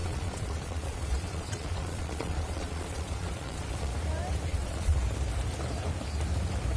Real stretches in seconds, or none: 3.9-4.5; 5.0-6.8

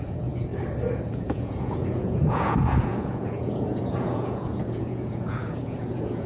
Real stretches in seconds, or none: 0.5-1.1

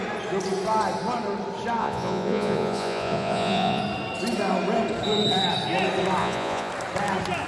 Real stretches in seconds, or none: 0.0-1.8; 3.8-6.2; 6.7-7.5